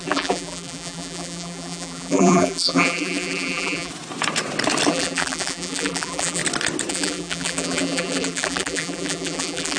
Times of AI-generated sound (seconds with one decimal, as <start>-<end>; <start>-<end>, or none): 0.0-3.9; 4.9-6.4; 6.9-9.8